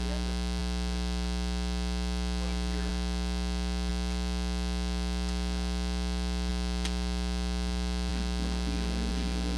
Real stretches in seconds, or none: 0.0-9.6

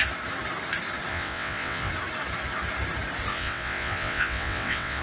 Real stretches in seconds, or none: 0.0-1.1; 1.9-3.3

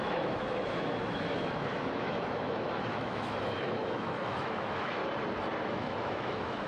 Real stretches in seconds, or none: 5.0-5.6

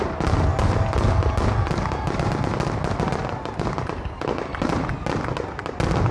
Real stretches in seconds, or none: 0.0-6.1